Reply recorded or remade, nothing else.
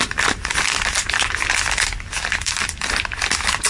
remade